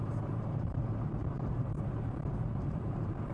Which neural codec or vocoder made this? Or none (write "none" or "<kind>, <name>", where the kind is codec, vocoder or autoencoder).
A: vocoder, BigVGAN v2